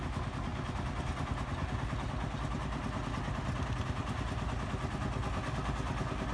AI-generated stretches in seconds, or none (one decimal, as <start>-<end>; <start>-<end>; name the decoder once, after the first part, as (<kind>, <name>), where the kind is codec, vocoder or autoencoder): none